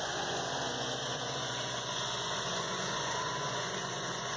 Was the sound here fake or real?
fake